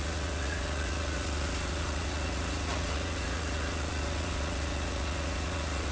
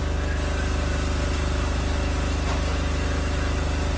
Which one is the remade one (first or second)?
first